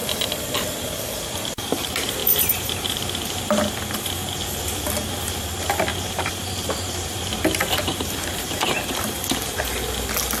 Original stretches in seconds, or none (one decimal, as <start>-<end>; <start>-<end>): 0.0-2.2; 3.4-5.9; 8.8-10.4